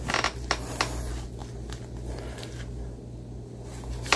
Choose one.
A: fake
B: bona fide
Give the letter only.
B